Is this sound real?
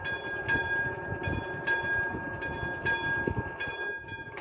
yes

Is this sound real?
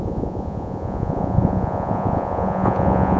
no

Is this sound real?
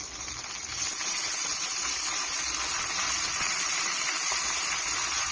yes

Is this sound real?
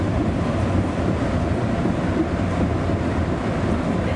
no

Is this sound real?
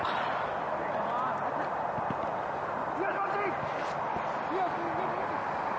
yes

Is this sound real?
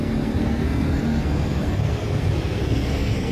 no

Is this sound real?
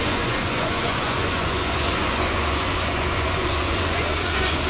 no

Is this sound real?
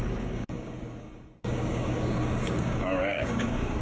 no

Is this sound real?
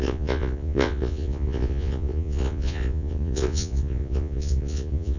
no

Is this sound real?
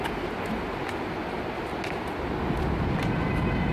yes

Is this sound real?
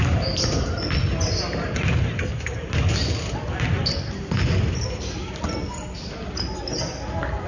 yes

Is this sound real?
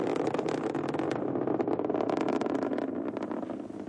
yes